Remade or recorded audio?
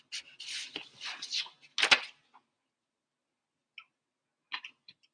recorded